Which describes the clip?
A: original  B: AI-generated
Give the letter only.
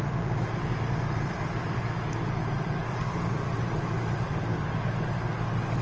A